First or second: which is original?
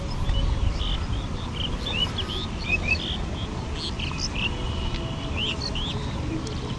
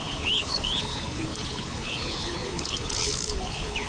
first